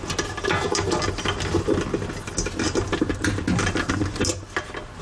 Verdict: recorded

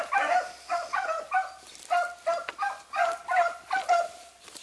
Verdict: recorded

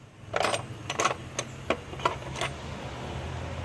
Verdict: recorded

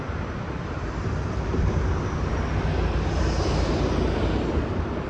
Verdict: remade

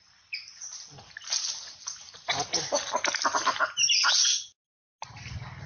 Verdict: recorded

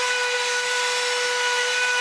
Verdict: recorded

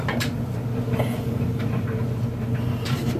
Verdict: recorded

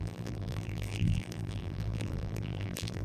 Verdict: remade